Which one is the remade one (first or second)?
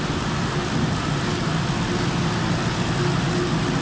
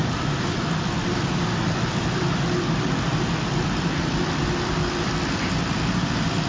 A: second